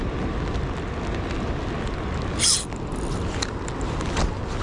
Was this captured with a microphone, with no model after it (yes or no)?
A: yes